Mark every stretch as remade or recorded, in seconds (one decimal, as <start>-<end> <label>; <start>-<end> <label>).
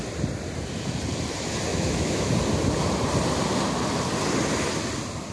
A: 0.0-1.7 recorded; 1.7-2.3 remade; 2.3-5.3 recorded